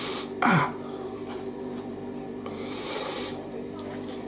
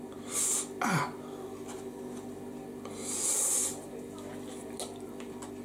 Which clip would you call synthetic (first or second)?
first